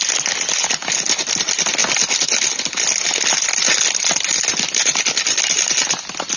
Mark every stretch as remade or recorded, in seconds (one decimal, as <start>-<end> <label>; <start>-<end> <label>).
0.0-6.4 recorded

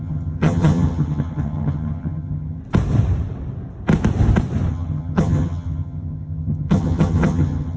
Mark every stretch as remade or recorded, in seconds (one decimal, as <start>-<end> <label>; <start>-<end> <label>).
0.0-2.6 remade; 2.6-4.7 recorded; 4.7-7.8 remade

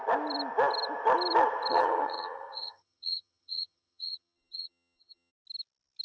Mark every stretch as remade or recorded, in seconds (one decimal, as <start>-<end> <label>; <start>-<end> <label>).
0.0-1.7 recorded; 1.7-5.3 remade; 5.3-6.0 recorded